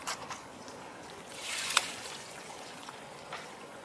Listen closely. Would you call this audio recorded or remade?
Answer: remade